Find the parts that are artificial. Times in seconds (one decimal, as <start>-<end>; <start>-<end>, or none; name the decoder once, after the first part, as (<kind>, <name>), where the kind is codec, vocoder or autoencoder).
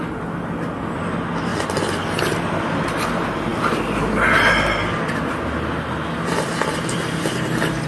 none